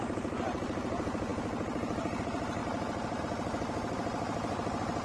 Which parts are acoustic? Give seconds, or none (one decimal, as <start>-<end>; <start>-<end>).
none